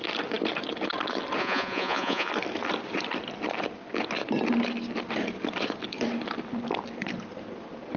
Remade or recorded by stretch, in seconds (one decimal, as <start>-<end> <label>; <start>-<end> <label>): 0.0-1.4 recorded; 1.4-2.3 remade; 2.3-8.0 recorded